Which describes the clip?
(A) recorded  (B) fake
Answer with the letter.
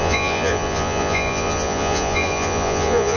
B